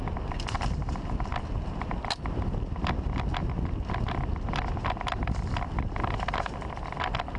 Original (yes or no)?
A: yes